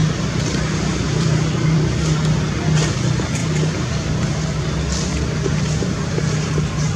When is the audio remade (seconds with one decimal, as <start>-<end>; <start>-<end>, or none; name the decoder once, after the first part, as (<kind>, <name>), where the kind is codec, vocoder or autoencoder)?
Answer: 0.0-2.5 (vocoder, BigVGAN v2); 3.4-6.5